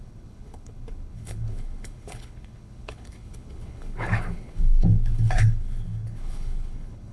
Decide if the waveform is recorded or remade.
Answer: remade